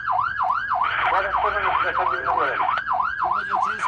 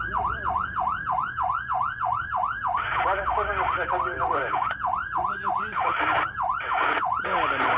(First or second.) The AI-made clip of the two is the second